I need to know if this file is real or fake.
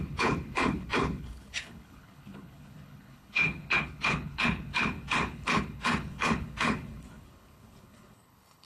fake